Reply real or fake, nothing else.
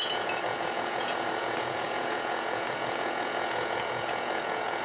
fake